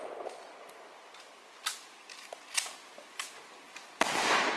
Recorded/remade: recorded